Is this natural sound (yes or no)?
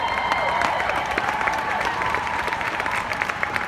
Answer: no